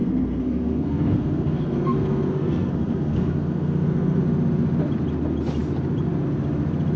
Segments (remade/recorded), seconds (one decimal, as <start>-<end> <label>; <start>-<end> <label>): 0.0-4.2 remade; 4.2-7.0 recorded